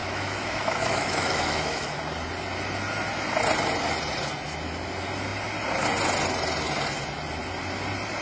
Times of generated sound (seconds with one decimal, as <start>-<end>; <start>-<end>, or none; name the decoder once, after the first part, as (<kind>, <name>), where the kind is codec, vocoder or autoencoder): 0.0-2.0 (autoencoder, DAC-VAE)